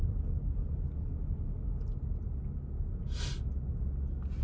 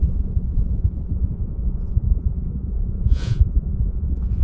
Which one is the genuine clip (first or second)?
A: first